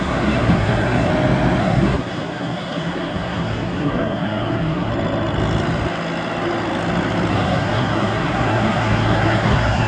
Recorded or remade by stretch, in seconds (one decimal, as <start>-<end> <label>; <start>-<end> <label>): 0.0-1.1 remade; 1.1-1.6 recorded; 1.6-4.9 remade; 4.9-7.3 recorded; 7.3-9.9 remade

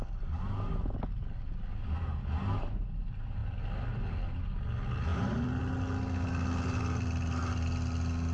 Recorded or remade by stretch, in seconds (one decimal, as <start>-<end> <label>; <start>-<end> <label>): 0.0-8.3 recorded

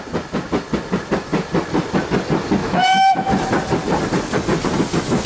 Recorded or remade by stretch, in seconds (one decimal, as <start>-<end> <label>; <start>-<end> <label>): 0.0-2.6 recorded; 2.6-3.3 remade; 3.3-5.3 recorded

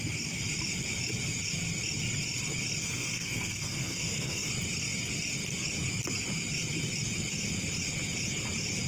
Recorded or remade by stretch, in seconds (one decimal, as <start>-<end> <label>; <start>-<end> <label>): 0.0-2.8 recorded; 2.8-4.5 remade; 4.5-8.9 recorded

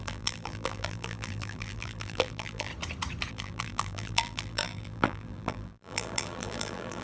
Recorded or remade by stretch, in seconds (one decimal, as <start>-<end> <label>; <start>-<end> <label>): 0.0-2.7 remade; 2.7-3.3 recorded; 3.3-7.0 remade